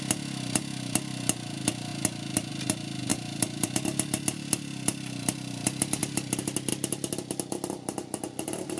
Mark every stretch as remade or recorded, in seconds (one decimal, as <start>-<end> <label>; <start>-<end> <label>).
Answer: 0.0-3.1 recorded; 3.1-6.0 remade; 6.0-8.8 recorded